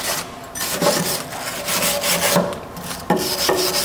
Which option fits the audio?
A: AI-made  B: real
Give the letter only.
B